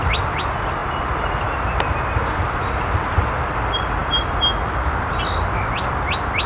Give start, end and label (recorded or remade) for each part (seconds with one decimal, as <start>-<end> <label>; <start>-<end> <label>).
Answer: 0.0-6.5 recorded